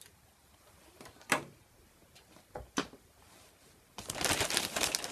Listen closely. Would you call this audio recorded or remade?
recorded